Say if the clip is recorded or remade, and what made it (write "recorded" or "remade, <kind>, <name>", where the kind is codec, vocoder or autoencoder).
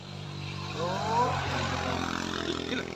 remade, vocoder, BigVGAN v2